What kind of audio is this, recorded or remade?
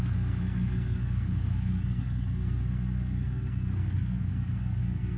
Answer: remade